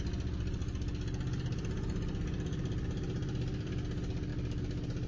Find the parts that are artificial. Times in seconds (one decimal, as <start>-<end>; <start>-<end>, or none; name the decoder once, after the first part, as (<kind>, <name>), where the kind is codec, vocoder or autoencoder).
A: none